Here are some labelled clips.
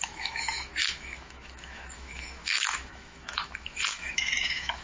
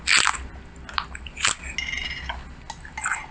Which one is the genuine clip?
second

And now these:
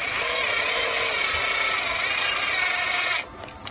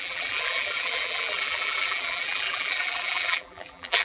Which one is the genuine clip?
first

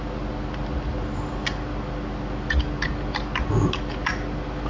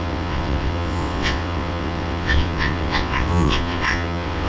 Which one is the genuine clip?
first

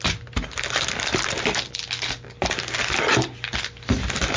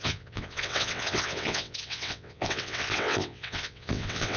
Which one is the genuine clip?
first